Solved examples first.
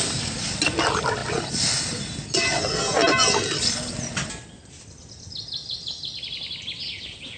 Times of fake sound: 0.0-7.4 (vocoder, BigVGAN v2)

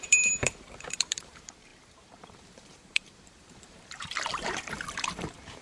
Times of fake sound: 0.0-5.6 (vocoder, BigVGAN v2)

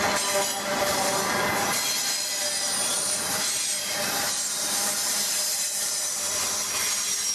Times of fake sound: 2.9-5.9 (vocoder, BigVGAN v2)

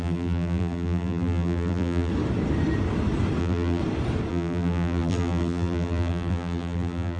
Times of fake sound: 0.0-2.1 (vocoder, BigVGAN v2); 3.4-3.8; 4.3-7.2